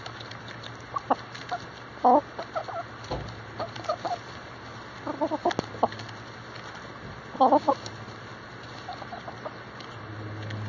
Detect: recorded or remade recorded